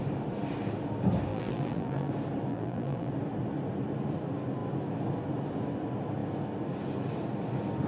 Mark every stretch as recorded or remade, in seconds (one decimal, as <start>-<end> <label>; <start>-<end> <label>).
0.0-1.3 recorded; 1.3-2.1 remade; 2.1-2.5 recorded; 2.5-3.1 remade; 3.1-7.9 recorded